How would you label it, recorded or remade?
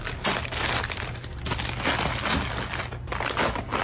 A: recorded